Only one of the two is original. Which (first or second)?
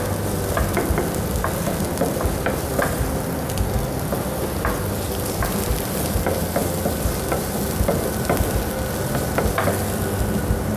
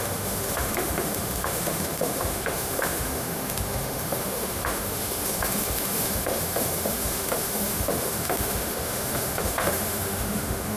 first